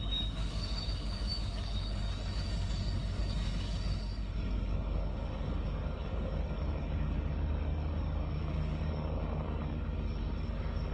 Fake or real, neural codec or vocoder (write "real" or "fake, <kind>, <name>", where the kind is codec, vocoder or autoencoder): fake, codec, DAC